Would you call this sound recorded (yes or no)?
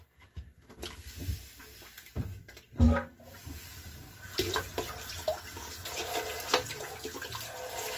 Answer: yes